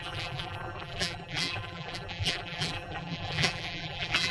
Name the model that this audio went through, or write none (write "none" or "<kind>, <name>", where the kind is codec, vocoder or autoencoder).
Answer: vocoder, BigVGAN v2